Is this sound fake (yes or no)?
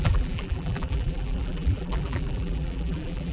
yes